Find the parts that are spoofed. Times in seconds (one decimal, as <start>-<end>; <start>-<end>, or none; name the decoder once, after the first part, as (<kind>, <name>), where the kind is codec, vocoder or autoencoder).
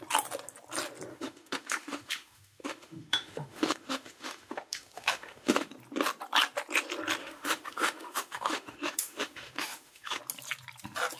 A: 1.1-5.7 (autoencoder, DAC-VAE); 7.2-10.2